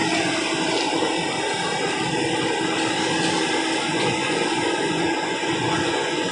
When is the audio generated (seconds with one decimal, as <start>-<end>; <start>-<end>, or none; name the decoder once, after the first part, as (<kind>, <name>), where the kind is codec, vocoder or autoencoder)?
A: 3.8-6.3 (vocoder, Vocos)